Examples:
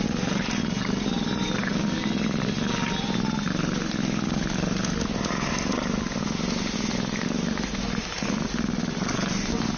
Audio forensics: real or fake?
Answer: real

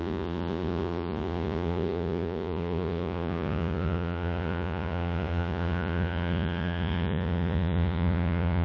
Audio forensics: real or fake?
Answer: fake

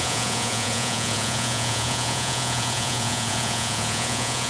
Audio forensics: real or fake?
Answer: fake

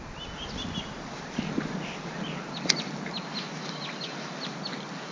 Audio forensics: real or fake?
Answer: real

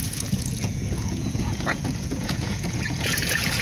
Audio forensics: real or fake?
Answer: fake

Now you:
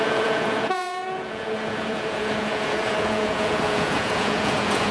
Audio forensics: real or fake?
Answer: fake